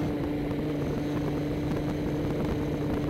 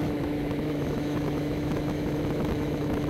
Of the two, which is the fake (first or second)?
second